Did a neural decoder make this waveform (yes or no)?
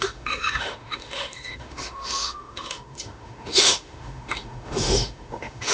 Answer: yes